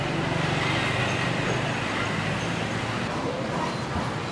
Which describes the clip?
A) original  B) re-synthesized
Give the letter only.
A